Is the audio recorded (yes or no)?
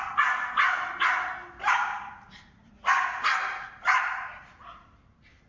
yes